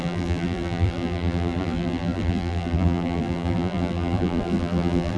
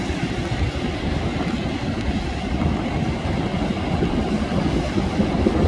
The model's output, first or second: first